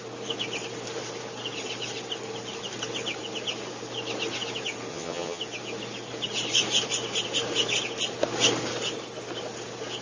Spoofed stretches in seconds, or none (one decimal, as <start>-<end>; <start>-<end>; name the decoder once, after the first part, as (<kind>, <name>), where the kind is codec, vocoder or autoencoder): 4.9-5.4 (vocoder, HiFi-GAN)